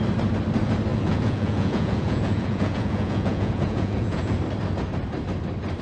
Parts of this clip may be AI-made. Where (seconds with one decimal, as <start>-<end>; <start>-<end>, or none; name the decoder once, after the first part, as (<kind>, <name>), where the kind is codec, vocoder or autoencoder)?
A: 0.9-4.4 (vocoder, Vocos)